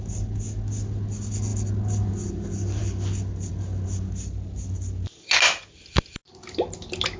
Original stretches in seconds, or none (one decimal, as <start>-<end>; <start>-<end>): 0.0-7.2